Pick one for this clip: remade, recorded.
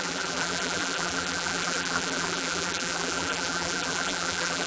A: remade